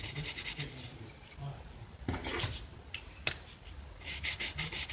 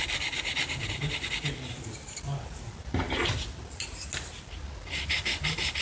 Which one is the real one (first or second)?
second